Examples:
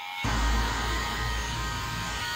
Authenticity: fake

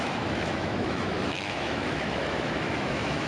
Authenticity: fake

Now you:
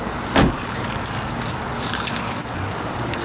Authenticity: fake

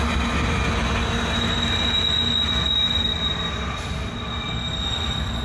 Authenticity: real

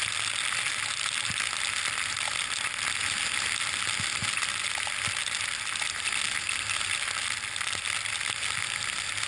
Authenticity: real